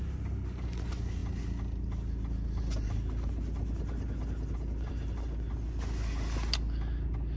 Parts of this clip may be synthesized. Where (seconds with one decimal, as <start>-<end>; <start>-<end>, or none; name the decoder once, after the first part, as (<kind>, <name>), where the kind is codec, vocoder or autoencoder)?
none